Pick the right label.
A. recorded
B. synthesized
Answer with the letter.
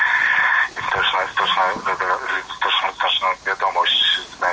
A